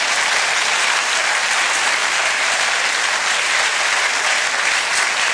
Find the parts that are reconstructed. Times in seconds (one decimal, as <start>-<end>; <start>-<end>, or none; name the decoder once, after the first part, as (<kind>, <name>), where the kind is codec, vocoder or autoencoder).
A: 2.0-2.9 (vocoder, BigVGAN v2)